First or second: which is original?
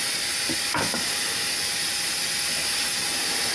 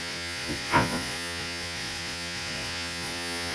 first